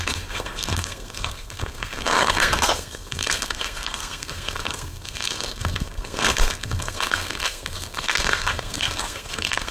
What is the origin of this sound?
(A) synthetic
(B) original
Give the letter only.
A